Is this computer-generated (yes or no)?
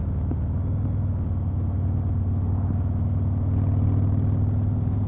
no